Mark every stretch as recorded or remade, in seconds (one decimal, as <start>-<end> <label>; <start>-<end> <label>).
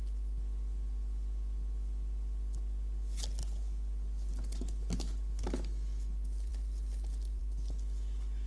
0.0-8.5 recorded